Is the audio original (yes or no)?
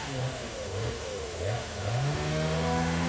no